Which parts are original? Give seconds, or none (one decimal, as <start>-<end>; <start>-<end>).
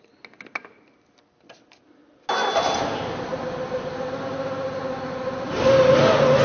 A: 0.0-6.4